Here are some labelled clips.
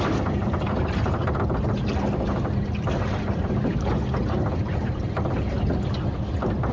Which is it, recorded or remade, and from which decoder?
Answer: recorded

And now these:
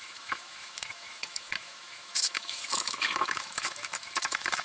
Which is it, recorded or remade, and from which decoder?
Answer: remade, autoencoder, DAC-VAE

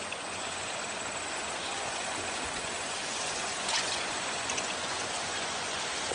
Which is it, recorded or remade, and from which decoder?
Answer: remade, vocoder, Vocos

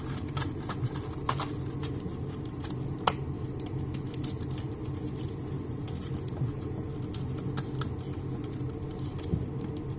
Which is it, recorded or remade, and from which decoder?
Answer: recorded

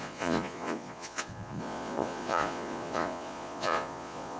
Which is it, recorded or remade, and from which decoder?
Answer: remade, vocoder, Vocos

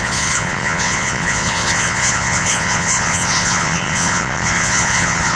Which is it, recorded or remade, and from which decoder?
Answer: remade, vocoder, Vocos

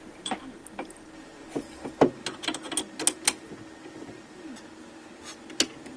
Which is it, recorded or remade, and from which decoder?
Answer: recorded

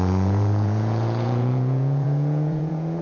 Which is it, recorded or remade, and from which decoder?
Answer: remade, vocoder, Vocos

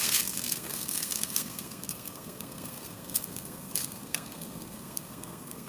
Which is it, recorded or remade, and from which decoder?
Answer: remade, codec, SNAC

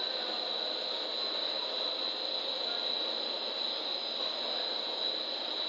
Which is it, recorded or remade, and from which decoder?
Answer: recorded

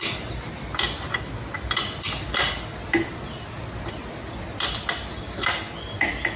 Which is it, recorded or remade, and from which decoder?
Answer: recorded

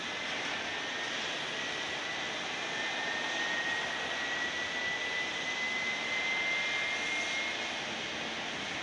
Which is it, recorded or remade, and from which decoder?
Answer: recorded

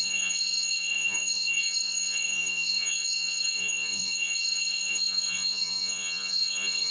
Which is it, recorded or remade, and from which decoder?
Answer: remade, vocoder, Vocos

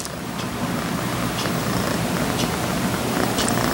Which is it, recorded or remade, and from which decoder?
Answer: recorded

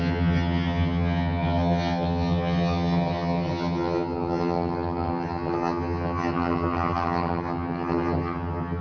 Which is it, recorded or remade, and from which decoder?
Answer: remade, vocoder, HiFi-GAN